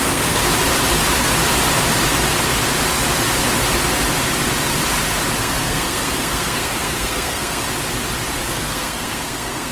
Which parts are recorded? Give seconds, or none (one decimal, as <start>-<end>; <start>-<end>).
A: 0.4-5.4; 7.6-8.5